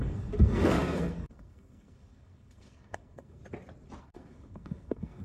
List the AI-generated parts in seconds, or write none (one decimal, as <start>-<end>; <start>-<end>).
0.0-3.4; 4.0-5.2